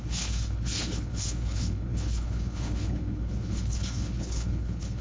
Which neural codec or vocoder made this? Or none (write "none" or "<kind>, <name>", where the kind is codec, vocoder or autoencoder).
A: codec, HILCodec